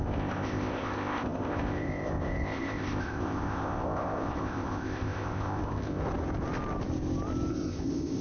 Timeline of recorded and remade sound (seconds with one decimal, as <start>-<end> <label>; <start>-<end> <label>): 0.0-6.0 remade; 6.0-7.5 recorded; 7.5-8.2 remade